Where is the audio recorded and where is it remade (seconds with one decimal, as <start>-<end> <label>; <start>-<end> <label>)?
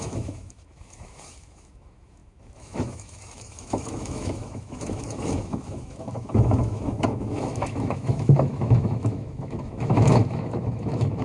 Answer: 0.0-11.2 remade